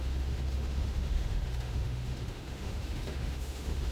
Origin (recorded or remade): remade